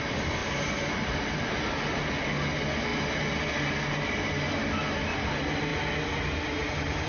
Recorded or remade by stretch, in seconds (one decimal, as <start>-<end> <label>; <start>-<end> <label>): 0.0-0.4 recorded; 0.4-1.4 remade; 1.4-7.1 recorded